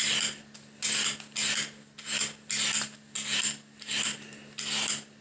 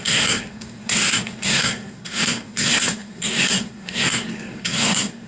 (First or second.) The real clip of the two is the first